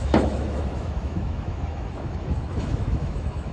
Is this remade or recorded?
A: remade